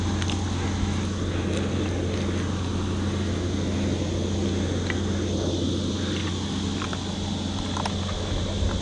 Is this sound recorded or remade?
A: recorded